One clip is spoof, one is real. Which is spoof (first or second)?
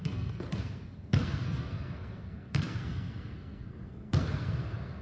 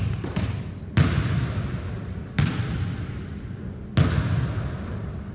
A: first